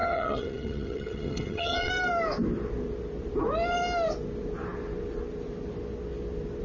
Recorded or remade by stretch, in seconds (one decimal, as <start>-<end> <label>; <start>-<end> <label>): 0.0-1.9 remade; 1.9-6.6 recorded

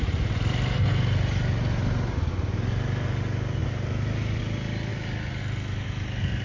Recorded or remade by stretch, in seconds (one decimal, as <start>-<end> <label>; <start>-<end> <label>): 0.0-6.4 recorded

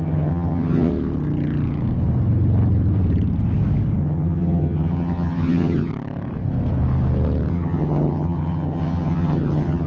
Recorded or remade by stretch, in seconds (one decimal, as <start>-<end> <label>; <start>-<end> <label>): 0.0-0.9 remade; 0.9-4.0 recorded; 4.0-5.9 remade; 5.9-7.5 recorded; 7.5-9.9 remade

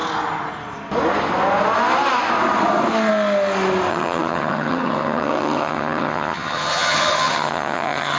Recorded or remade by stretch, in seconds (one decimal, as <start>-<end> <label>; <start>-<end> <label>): 0.0-3.9 recorded; 3.9-8.2 remade

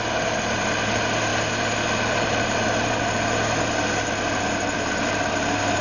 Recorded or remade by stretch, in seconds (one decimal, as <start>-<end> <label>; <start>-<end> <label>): 0.0-5.8 recorded

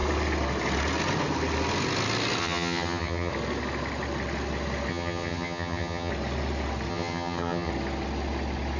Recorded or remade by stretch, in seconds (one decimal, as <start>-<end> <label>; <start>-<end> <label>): 0.0-2.4 recorded; 2.4-3.3 remade; 3.3-4.9 recorded; 4.9-6.1 remade; 6.1-6.9 recorded; 6.9-7.7 remade; 7.7-8.8 recorded

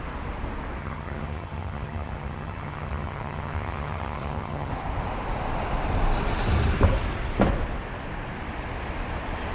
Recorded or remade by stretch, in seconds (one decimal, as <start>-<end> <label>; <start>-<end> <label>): 0.0-0.8 recorded; 0.8-4.7 remade; 4.7-9.5 recorded

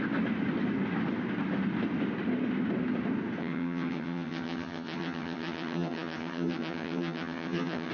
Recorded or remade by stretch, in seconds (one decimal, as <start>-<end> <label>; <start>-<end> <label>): 0.0-3.4 recorded; 3.4-7.9 remade